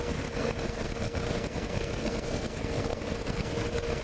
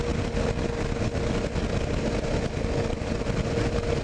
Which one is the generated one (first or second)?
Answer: first